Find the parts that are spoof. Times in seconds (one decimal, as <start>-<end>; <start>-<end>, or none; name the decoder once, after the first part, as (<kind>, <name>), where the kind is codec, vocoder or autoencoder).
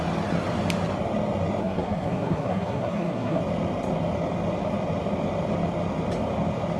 1.6-3.4 (codec, SNAC)